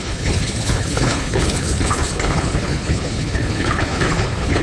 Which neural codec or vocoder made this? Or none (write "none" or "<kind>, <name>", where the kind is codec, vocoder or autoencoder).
codec, HILCodec